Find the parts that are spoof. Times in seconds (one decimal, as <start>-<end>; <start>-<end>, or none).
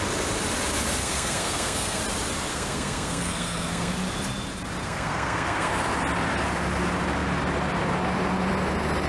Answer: 1.0-2.0; 2.5-3.9; 4.8-5.7